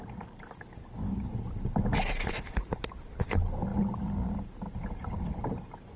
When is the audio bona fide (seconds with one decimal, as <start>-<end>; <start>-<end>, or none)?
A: 0.0-6.0